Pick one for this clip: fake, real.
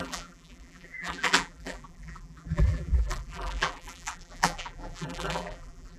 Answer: fake